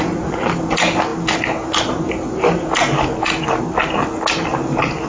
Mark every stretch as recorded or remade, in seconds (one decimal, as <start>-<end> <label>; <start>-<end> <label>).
0.0-5.1 recorded